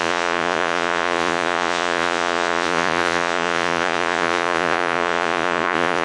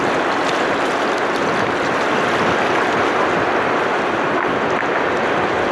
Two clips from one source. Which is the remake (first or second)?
first